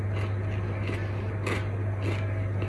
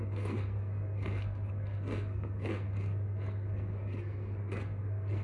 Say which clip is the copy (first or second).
second